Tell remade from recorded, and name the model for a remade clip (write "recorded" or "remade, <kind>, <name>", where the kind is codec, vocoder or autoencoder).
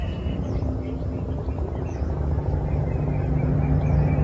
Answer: recorded